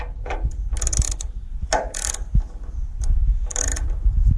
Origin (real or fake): real